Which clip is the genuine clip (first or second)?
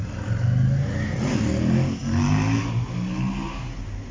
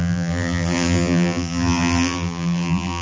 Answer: first